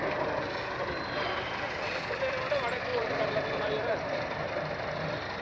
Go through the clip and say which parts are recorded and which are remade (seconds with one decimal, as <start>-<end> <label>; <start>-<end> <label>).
0.0-2.9 recorded; 2.9-4.7 remade; 4.7-5.4 recorded